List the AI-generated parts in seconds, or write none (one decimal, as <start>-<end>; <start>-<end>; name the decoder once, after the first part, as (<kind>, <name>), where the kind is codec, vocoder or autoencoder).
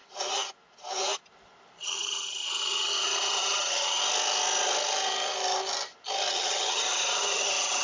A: 1.8-4.0 (vocoder, HiFi-GAN); 6.3-7.8